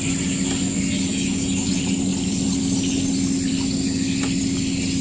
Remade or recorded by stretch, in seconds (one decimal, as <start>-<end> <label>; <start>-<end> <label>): 0.0-1.1 recorded; 1.1-1.7 remade; 1.7-5.0 recorded